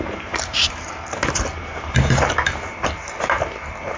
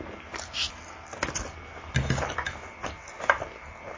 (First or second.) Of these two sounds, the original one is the second